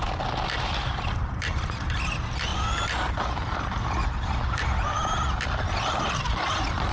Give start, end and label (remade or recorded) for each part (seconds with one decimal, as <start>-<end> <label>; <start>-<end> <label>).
0.0-6.9 recorded